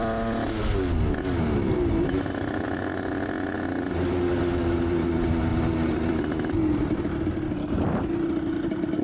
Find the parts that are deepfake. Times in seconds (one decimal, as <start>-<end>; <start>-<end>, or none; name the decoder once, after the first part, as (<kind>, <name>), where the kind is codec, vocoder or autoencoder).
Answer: none